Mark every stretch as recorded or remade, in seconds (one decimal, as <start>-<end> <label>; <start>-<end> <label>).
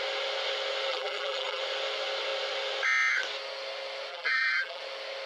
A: 0.0-0.9 recorded; 0.9-1.6 remade; 1.6-4.1 recorded; 4.1-4.8 remade; 4.8-5.3 recorded